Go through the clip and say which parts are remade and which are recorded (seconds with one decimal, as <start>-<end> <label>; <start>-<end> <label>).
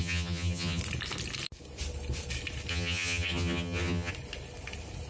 0.0-0.8 remade; 0.8-2.7 recorded; 2.7-4.1 remade; 4.1-5.1 recorded